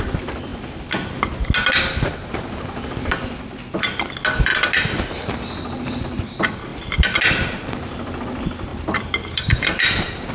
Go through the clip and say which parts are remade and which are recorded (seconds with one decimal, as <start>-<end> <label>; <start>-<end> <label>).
0.0-8.7 recorded; 8.7-10.3 remade